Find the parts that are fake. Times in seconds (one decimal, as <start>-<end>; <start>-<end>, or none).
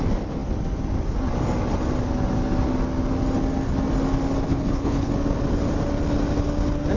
4.5-5.1